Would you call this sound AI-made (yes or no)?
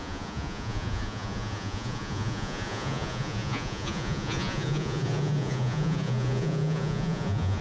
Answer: yes